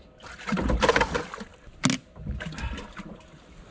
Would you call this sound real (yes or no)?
yes